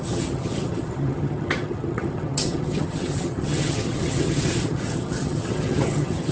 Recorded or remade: remade